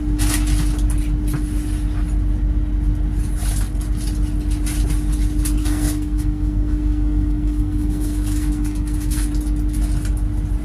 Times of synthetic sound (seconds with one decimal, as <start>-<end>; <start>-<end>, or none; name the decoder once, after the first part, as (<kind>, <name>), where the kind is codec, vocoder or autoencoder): 5.6-9.3 (codec, SNAC)